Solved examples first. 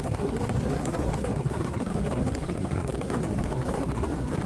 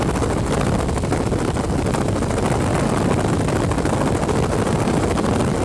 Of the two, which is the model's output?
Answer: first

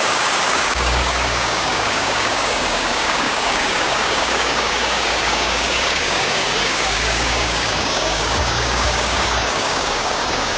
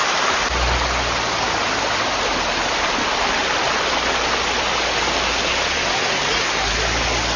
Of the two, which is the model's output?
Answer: first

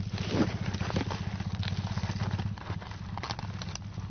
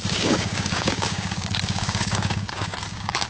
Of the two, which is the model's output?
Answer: second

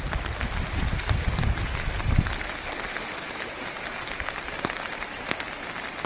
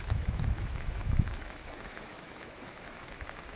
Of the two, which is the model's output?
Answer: second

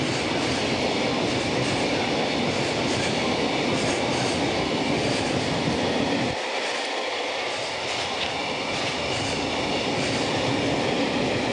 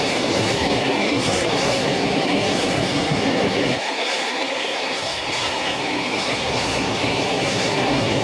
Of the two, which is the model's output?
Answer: second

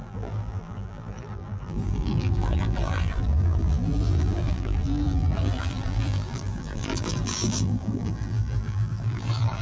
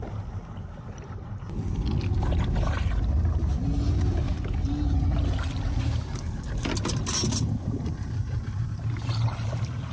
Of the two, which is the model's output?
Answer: first